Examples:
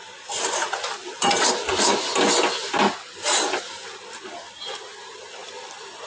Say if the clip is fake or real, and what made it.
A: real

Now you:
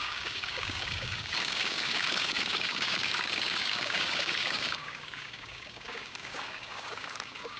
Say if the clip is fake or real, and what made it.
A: fake, codec, DAC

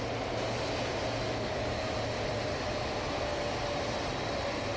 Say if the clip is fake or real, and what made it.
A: real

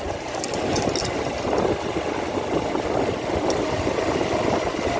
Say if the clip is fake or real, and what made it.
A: real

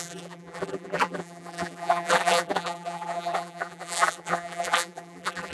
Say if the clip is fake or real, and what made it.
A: fake, vocoder, BigVGAN v2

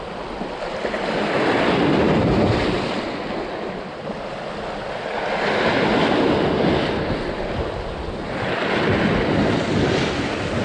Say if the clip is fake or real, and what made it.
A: real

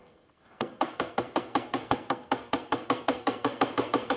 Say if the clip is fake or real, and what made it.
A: fake, codec, SNAC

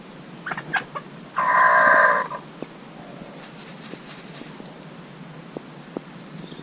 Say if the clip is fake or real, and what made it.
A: real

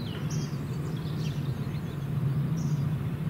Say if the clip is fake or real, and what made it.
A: real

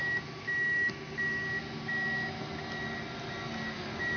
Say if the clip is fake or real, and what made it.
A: real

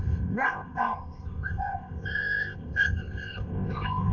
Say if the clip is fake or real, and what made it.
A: fake, codec, ZipCodec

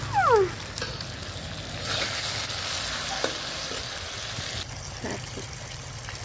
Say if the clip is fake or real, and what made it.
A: real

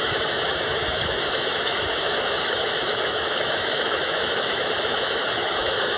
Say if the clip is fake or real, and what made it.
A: fake, autoencoder, DAC-VAE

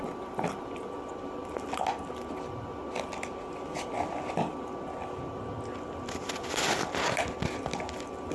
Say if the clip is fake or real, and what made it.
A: real